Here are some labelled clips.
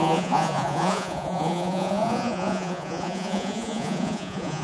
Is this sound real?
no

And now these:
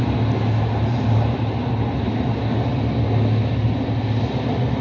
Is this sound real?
yes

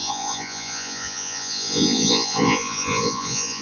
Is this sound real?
no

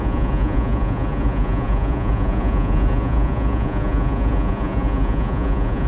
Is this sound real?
no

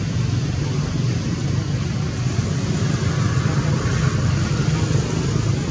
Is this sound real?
yes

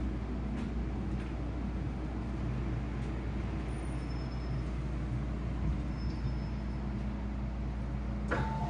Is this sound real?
yes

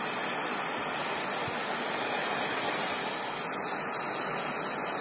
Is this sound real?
yes